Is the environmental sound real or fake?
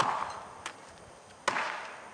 real